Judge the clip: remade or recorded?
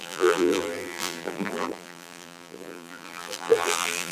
remade